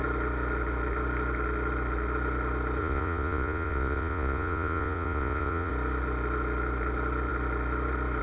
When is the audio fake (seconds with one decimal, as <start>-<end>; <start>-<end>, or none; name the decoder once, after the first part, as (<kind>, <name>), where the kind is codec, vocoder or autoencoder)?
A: 2.8-5.7 (vocoder, Vocos)